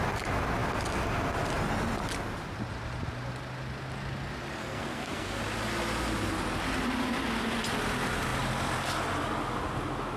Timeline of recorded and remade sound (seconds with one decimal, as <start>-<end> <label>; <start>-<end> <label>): 0.0-4.6 recorded; 4.6-5.4 remade; 5.4-10.2 recorded